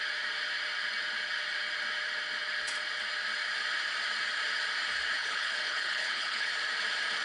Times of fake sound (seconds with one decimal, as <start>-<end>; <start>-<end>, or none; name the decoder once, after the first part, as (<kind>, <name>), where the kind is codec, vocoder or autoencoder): 5.2-6.5 (codec, HILCodec)